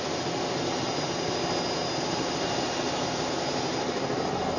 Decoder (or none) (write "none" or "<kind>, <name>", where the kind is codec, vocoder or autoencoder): none